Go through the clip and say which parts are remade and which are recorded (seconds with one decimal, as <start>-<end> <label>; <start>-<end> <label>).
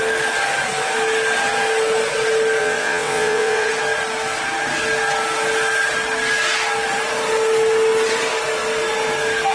0.0-2.6 recorded; 2.6-3.7 remade; 3.7-9.5 recorded